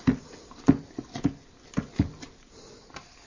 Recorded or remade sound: recorded